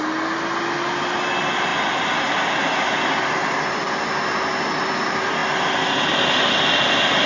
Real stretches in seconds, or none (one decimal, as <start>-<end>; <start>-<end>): 0.0-7.3